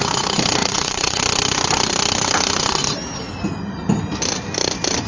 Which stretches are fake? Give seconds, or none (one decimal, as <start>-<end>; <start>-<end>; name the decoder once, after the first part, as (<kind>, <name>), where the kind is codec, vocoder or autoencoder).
0.6-1.2 (vocoder, WaveNeXt)